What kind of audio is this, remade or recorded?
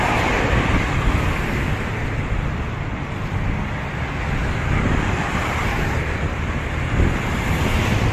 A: recorded